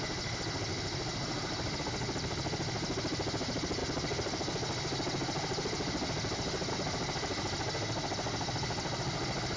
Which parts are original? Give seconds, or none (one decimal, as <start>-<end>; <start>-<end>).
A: 0.0-9.6

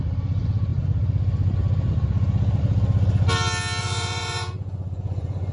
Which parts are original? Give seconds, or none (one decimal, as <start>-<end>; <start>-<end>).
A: 0.0-3.8

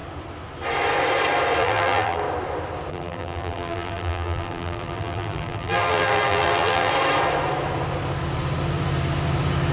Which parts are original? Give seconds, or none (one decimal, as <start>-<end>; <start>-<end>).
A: 0.0-1.6; 2.2-2.9; 6.9-9.7

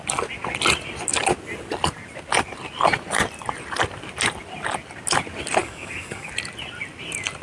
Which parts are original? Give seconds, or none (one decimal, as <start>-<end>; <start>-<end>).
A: 0.0-5.6; 6.3-7.4

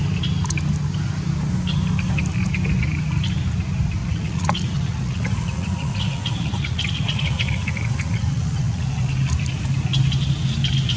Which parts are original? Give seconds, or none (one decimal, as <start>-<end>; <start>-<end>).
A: 0.0-4.0; 9.1-11.0